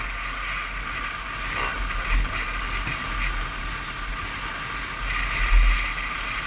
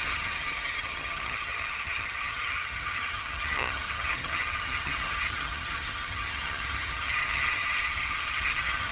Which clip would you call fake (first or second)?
second